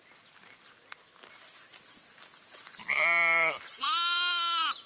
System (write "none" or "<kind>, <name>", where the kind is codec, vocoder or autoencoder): none